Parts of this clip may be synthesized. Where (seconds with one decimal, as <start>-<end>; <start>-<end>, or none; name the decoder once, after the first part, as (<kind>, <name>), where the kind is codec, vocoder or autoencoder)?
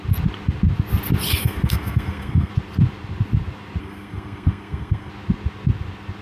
1.4-2.5 (codec, SNAC); 3.8-5.1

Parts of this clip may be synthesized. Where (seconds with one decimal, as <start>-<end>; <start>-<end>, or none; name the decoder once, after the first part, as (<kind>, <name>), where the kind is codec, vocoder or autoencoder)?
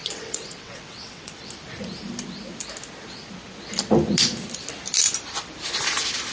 0.0-1.5 (vocoder, WaveNeXt)